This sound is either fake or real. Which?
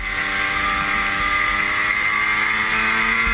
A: real